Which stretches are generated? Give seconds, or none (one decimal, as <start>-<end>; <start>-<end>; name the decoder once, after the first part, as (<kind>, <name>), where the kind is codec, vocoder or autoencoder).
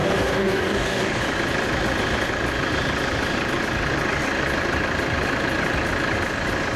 0.0-1.2 (codec, DAC)